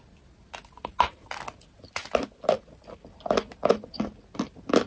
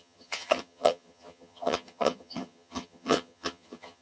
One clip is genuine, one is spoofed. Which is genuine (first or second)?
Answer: first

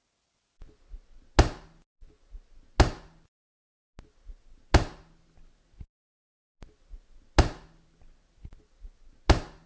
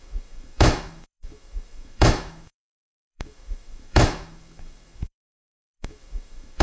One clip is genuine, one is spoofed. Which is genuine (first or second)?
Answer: first